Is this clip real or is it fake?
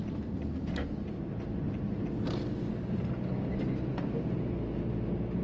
real